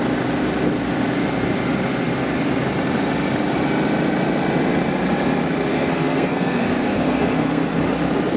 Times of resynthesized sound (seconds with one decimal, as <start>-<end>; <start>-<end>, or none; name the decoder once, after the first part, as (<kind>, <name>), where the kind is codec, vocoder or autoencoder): 5.7-7.8 (codec, SNAC)